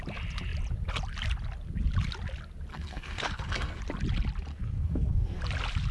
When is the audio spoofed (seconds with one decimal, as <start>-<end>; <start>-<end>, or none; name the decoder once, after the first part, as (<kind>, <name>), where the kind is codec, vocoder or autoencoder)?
2.7-3.8 (codec, SNAC); 4.5-5.4